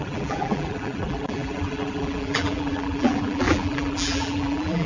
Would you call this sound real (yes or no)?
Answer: no